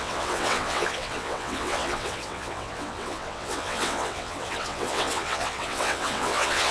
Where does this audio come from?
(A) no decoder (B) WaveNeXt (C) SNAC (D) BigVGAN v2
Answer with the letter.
B